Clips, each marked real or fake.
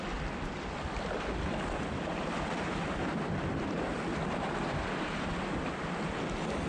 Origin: real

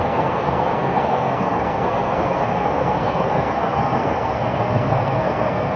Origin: fake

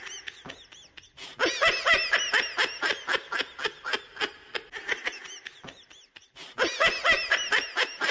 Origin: real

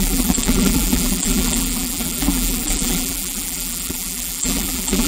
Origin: fake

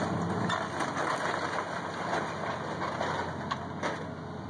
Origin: real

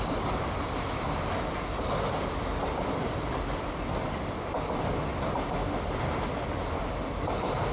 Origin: real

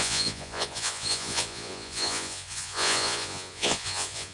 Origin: fake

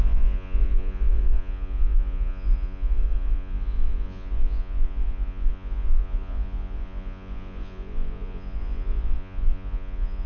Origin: fake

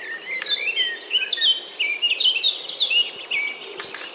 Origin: real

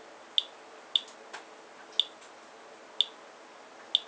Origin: real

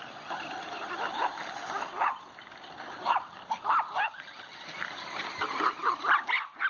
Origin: real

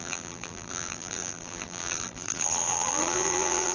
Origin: fake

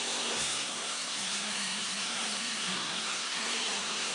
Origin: fake